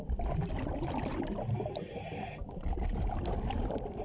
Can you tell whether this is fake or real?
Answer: real